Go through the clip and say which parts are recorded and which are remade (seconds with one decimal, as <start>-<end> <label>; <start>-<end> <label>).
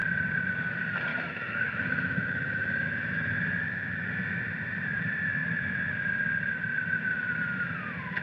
0.0-1.1 recorded; 1.1-4.4 remade; 4.4-5.4 recorded; 5.4-6.0 remade; 6.0-8.2 recorded